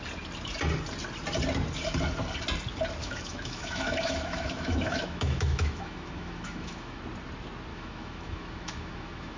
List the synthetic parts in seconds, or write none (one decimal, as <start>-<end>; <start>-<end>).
3.0-7.0; 7.7-9.4